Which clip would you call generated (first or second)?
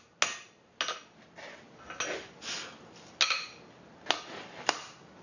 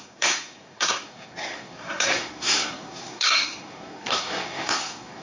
second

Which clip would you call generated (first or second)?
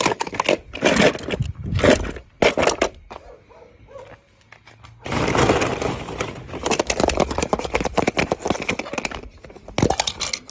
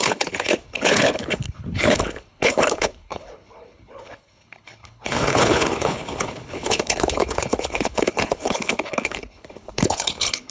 second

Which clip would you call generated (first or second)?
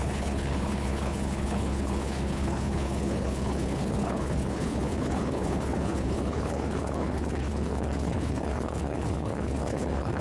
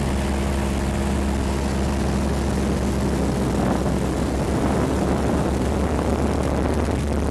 first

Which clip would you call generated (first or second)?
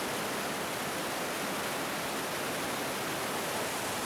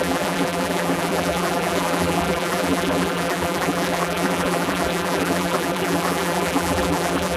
second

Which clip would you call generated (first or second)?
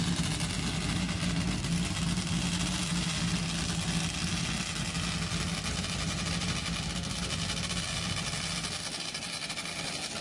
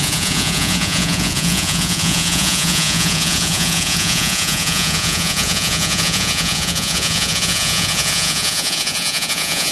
second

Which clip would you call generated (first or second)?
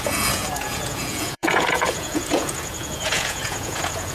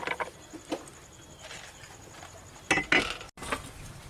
first